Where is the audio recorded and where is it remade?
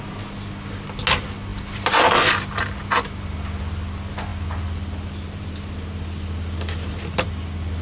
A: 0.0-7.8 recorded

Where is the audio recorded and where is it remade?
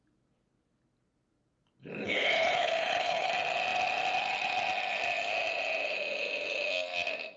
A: 0.0-1.8 recorded; 1.8-3.3 remade; 3.3-7.4 recorded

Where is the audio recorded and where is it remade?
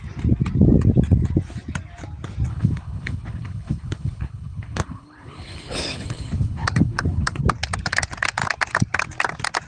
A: 0.0-2.5 recorded; 2.5-7.4 remade; 7.4-9.7 recorded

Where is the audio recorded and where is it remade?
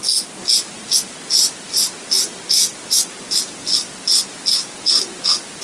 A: 0.0-5.6 recorded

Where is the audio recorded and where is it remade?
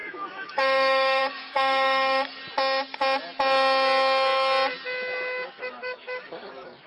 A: 0.0-2.4 remade; 2.4-5.6 recorded; 5.6-6.9 remade